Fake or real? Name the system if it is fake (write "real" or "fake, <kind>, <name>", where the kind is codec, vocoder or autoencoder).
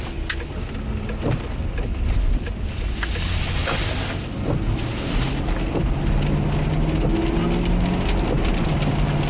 real